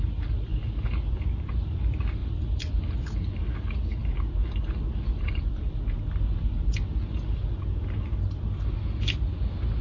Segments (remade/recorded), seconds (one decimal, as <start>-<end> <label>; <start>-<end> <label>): 0.0-9.8 recorded

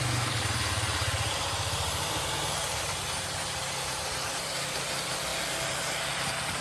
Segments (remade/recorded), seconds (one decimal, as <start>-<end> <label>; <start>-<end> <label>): 0.0-5.3 remade; 5.3-5.9 recorded; 5.9-6.6 remade

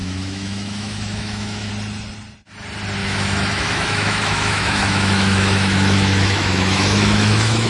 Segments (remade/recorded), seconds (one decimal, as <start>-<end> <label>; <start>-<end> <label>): 0.0-1.7 remade; 1.7-3.0 recorded; 3.0-7.7 remade